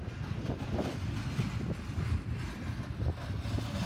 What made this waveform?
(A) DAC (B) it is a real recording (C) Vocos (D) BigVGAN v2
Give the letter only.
B